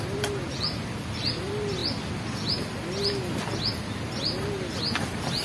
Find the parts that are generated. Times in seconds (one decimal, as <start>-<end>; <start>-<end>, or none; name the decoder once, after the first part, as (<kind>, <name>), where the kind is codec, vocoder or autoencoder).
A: none